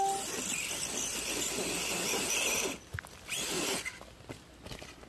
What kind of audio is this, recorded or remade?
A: recorded